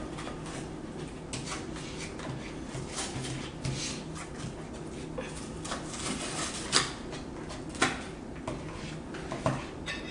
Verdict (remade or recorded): recorded